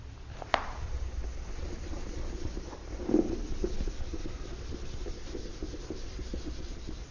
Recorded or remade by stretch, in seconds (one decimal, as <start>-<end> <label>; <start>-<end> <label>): 0.0-7.1 recorded